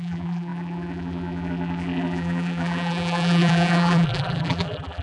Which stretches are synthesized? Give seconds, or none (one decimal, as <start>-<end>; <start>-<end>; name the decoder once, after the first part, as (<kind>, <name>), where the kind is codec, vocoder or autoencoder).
0.0-5.0 (vocoder, BigVGAN v2)